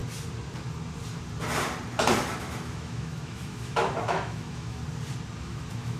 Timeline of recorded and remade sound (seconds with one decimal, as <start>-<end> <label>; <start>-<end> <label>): 0.0-2.4 recorded; 2.4-4.8 remade; 4.8-5.4 recorded; 5.4-6.0 remade